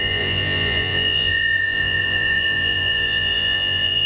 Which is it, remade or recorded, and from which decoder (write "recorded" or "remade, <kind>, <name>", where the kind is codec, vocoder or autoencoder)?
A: remade, vocoder, Vocos